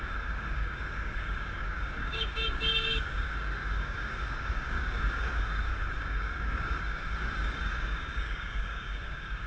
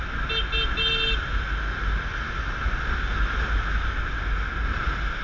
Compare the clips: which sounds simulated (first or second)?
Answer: first